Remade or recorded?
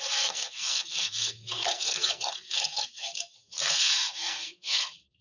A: remade